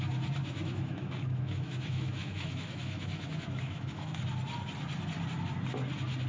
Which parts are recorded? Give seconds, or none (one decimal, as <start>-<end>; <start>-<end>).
0.0-0.4; 4.2-6.3